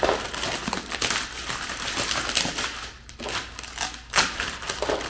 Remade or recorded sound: recorded